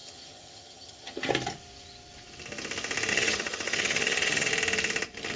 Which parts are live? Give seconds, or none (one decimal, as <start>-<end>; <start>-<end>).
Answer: 1.3-3.1; 4.5-5.4